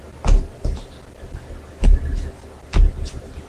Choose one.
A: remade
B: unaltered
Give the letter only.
B